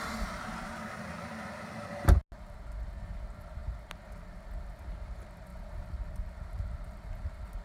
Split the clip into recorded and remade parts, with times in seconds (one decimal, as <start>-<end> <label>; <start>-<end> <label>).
0.0-7.6 recorded

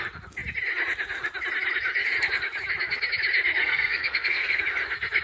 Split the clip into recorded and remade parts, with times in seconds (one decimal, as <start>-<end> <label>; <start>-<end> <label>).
0.0-3.6 recorded; 3.6-4.6 remade; 4.6-5.2 recorded

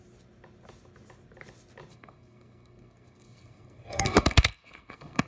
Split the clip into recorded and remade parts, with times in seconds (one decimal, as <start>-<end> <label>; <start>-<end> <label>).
0.0-1.9 recorded; 1.9-5.3 remade

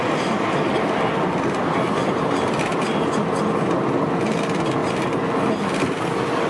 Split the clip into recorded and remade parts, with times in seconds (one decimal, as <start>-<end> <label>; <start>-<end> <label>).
0.0-6.5 recorded

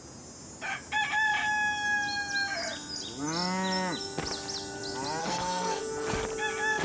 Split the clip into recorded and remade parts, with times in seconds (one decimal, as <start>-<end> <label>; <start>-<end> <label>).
0.0-5.2 recorded; 5.2-5.8 remade; 5.8-6.8 recorded

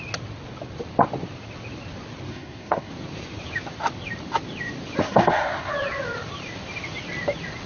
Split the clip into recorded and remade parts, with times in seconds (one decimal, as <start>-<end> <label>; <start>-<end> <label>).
0.0-2.3 recorded; 2.3-2.9 remade; 2.9-5.0 recorded; 5.0-5.7 remade; 5.7-7.7 recorded

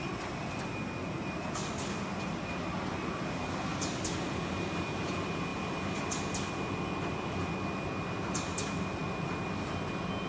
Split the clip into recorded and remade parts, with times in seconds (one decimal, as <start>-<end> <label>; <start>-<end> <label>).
0.0-10.3 recorded